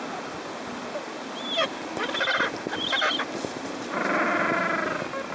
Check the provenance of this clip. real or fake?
real